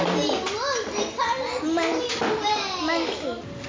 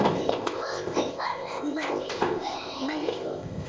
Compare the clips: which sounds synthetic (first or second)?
second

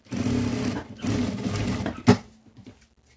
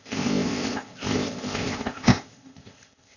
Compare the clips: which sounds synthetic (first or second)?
second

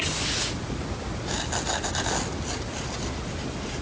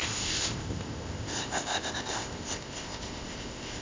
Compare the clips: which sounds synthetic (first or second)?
second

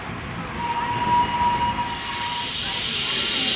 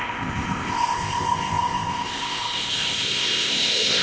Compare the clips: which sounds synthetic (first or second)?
second